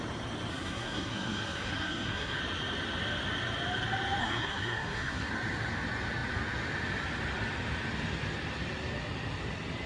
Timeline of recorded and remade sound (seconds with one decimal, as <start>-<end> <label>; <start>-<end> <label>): 0.0-0.5 recorded; 0.5-2.4 remade; 2.4-4.2 recorded; 4.2-5.3 remade; 5.3-9.9 recorded